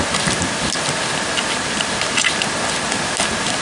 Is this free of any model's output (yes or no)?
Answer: yes